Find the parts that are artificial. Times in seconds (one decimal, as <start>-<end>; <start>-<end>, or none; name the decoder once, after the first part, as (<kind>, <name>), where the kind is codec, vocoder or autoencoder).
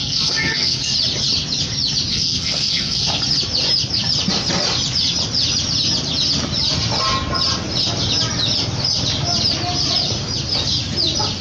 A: 0.0-0.9 (codec, SNAC); 2.1-3.2